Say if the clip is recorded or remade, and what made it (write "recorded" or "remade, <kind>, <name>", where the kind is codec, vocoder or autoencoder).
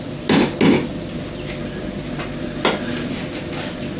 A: recorded